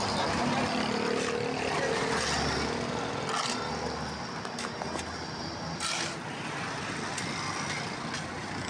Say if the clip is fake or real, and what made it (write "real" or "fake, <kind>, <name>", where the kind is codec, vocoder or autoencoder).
real